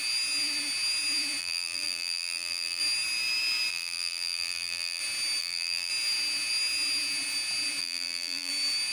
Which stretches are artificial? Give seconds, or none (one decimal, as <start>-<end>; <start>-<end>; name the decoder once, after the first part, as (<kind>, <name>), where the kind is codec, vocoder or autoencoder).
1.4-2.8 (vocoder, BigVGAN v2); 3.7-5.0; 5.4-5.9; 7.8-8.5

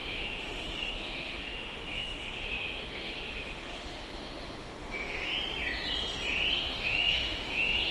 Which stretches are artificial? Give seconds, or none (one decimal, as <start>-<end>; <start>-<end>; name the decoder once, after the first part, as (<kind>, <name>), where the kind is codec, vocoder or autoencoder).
0.0-5.3 (autoencoder, DAC-VAE); 6.5-7.9

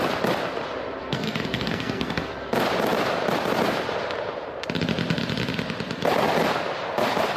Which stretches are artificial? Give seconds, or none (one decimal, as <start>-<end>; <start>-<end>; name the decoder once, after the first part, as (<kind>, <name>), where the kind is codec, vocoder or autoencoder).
1.0-2.3 (codec, SNAC)

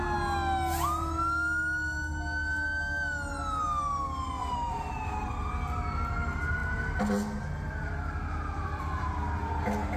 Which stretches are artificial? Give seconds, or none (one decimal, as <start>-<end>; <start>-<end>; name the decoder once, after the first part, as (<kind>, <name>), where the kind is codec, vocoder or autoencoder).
4.4-5.3 (vocoder, BigVGAN v2)

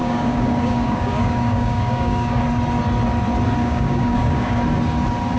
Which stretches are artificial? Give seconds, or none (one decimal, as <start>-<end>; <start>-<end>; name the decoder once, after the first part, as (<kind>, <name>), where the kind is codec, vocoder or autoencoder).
0.0-2.4 (codec, DAC); 3.6-4.6